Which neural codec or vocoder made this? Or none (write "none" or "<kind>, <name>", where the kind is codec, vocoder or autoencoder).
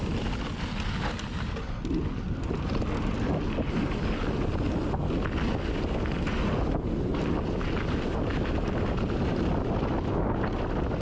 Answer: none